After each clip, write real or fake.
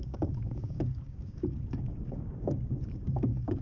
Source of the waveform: fake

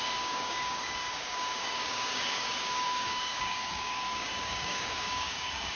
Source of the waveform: fake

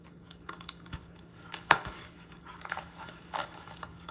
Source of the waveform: fake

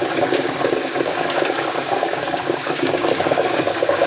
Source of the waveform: fake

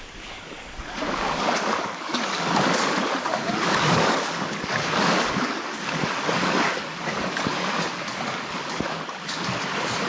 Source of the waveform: fake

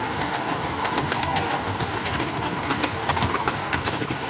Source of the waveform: fake